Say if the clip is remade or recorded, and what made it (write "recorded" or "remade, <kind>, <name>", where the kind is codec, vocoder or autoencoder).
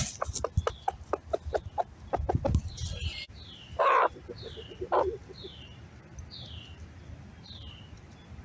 recorded